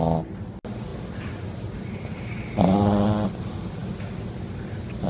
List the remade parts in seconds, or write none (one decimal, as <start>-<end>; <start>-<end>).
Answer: none